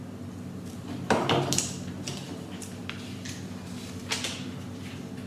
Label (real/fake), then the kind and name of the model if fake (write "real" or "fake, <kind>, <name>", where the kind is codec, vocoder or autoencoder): real